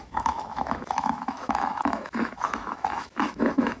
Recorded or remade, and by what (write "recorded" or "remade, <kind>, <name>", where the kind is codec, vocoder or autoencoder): remade, autoencoder, DAC-VAE